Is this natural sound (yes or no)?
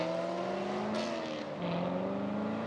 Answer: yes